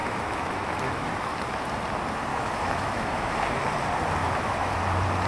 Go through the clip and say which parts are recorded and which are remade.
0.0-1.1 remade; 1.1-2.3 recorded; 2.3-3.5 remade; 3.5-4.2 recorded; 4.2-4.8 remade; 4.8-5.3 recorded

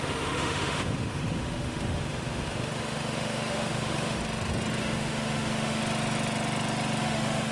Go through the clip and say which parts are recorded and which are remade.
0.0-4.2 remade; 4.2-4.8 recorded; 4.8-5.8 remade; 5.8-7.0 recorded; 7.0-7.5 remade

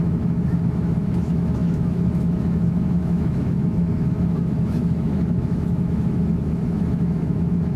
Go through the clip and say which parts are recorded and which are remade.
0.0-7.8 remade

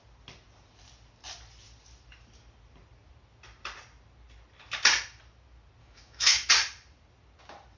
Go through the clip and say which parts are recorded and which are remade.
0.0-5.8 recorded; 5.8-6.5 remade; 6.5-7.8 recorded

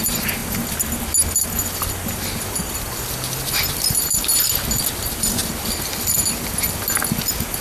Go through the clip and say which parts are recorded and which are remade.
0.0-7.6 recorded